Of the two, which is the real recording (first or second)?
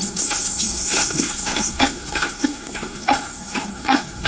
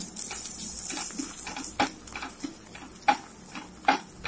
second